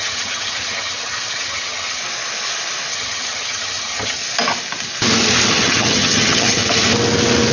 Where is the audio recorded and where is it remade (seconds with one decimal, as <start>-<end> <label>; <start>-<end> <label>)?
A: 0.0-2.0 remade; 2.0-2.9 recorded; 2.9-4.2 remade; 4.2-5.5 recorded; 5.5-6.6 remade; 6.6-7.5 recorded